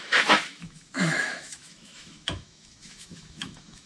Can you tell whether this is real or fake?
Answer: fake